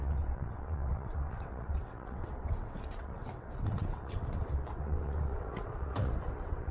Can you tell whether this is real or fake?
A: fake